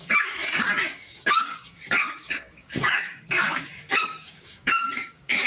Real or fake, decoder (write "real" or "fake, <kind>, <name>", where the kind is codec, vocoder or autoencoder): fake, codec, DAC